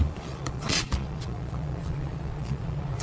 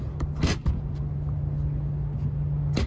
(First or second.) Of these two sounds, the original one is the second